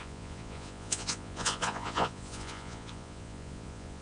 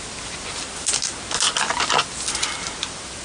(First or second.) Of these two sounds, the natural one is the second